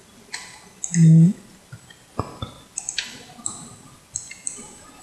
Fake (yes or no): no